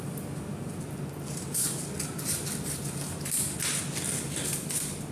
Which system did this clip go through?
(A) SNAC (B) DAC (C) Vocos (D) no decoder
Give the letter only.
D